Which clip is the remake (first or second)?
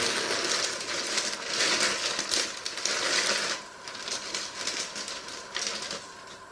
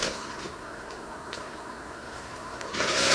second